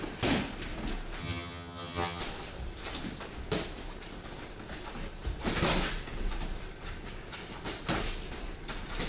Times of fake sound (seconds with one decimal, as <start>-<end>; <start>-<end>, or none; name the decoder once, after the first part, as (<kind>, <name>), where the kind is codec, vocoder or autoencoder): 1.2-2.2 (vocoder, HiFi-GAN)